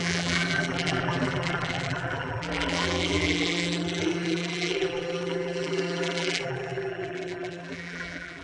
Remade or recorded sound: remade